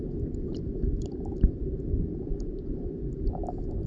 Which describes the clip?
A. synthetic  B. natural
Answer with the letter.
B